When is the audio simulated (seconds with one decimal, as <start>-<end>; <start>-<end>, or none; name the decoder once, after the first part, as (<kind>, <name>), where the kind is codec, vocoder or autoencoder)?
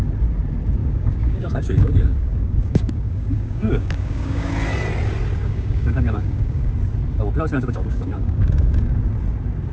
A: 0.8-4.5 (codec, DAC); 5.4-6.7; 7.5-9.0